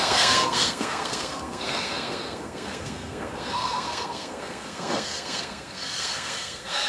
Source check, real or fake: fake